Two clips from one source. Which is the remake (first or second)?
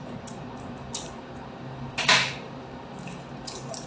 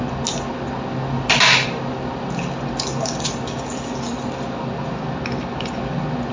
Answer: first